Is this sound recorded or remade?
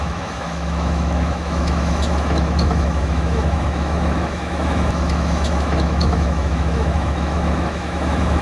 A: remade